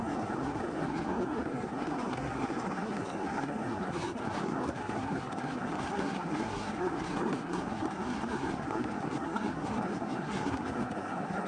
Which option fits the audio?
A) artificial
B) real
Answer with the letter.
A